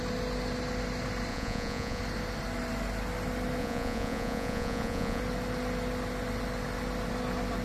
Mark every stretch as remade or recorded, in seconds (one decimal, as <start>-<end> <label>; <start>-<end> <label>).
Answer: 0.0-1.3 recorded; 1.3-2.0 remade; 2.0-3.6 recorded; 3.6-5.2 remade; 5.2-7.6 recorded